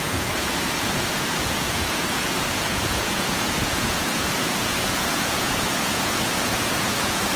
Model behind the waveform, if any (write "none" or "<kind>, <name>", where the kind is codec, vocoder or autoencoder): vocoder, Vocos